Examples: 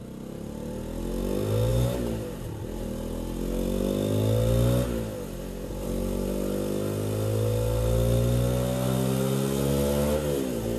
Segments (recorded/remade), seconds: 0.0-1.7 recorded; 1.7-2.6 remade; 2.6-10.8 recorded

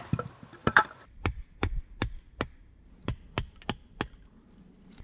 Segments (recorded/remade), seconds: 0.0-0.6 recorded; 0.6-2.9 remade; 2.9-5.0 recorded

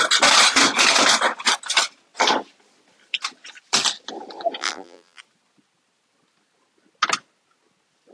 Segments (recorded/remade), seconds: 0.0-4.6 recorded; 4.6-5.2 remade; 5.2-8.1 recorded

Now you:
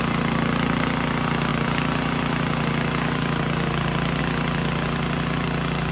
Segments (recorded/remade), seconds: 0.0-5.9 recorded

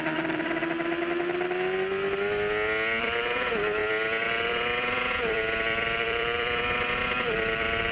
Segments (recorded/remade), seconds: 0.0-0.6 remade; 0.6-3.0 recorded; 3.0-3.8 remade; 3.8-4.5 recorded; 4.5-7.9 remade

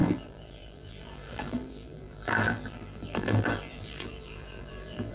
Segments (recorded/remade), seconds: 0.0-5.1 remade

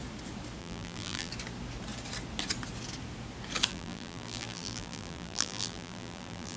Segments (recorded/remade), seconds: 0.0-0.6 recorded; 0.6-1.3 remade; 1.3-3.7 recorded; 3.7-6.6 remade